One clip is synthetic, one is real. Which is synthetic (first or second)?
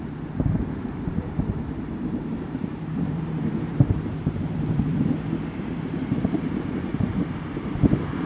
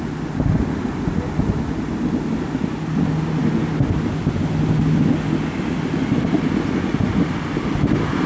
first